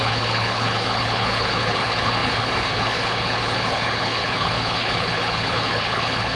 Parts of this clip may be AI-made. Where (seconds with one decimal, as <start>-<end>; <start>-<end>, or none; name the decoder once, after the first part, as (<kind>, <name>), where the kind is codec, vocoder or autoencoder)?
0.0-6.4 (codec, HILCodec)